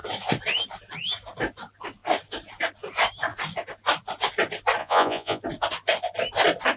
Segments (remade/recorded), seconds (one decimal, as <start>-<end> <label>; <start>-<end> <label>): 0.0-4.8 recorded; 4.8-5.4 remade; 5.4-6.8 recorded